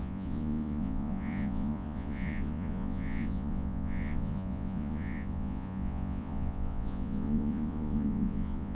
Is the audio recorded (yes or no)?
no